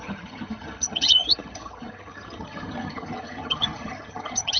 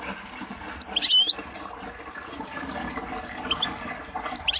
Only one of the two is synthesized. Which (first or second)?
first